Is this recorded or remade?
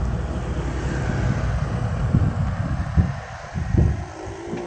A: recorded